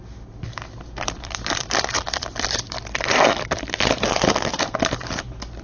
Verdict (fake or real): fake